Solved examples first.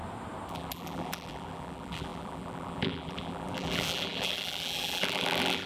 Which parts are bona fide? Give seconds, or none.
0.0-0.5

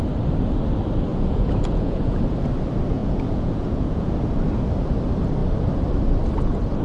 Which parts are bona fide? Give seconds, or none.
0.0-1.1; 2.2-3.0; 4.1-6.8

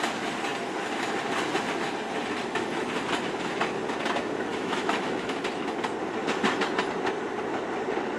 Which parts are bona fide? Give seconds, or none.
0.0-4.5; 5.4-8.2